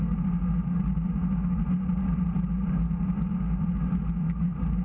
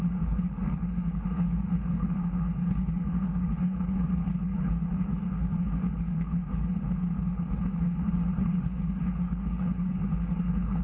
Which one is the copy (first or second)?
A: second